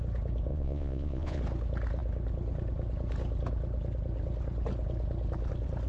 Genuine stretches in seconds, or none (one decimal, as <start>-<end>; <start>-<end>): 0.0-0.5; 1.4-5.9